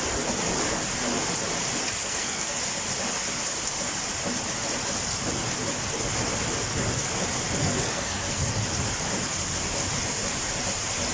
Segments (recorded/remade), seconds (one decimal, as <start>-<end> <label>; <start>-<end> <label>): 0.0-2.0 recorded; 2.0-2.6 remade; 2.6-7.6 recorded; 7.6-8.5 remade; 8.5-11.1 recorded